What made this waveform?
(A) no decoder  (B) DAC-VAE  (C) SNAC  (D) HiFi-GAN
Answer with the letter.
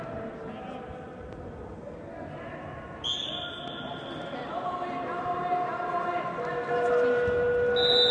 A